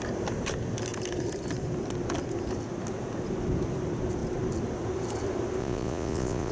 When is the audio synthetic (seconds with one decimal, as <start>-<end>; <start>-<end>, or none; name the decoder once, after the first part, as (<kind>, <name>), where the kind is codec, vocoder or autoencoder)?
5.6-6.5 (vocoder, Vocos)